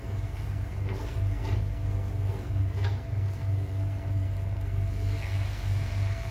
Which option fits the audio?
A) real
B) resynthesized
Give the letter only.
B